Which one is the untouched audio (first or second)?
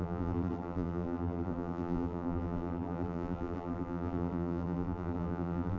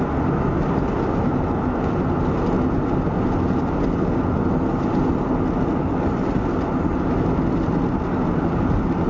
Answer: second